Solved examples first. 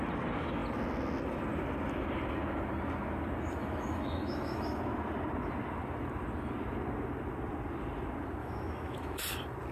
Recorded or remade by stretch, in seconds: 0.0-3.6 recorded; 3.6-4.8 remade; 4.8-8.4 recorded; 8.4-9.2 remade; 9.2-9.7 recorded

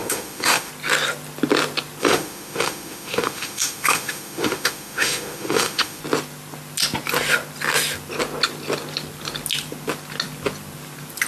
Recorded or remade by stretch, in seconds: 0.0-0.7 remade; 0.7-2.0 recorded; 2.0-6.0 remade; 6.0-11.3 recorded

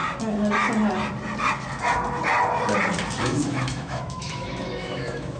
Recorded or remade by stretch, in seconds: 0.0-3.2 recorded; 3.2-5.4 remade

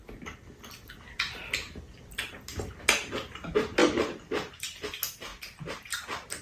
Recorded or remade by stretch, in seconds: 0.0-6.4 recorded

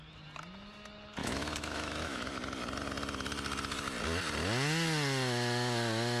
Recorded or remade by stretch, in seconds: 0.0-1.2 recorded; 1.2-2.3 remade; 2.3-6.2 recorded